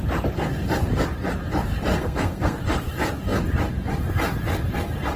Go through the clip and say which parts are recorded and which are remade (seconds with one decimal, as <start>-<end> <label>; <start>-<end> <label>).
0.0-1.9 recorded; 1.9-2.6 remade; 2.6-5.2 recorded